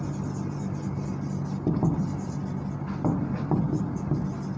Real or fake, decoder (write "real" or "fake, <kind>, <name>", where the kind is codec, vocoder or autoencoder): real